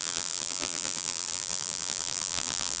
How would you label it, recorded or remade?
remade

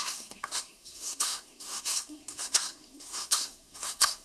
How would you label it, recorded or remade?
remade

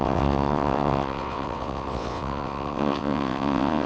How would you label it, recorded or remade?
remade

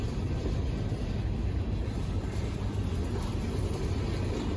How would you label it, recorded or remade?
recorded